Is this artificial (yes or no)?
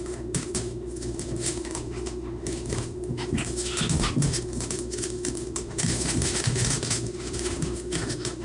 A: yes